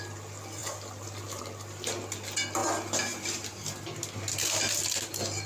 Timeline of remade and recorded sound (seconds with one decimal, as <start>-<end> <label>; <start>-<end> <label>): 0.0-5.5 recorded